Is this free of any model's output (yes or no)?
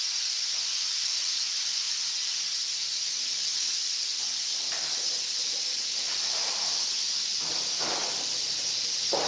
no